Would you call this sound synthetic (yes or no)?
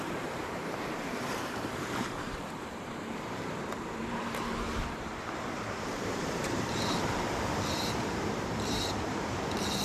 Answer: yes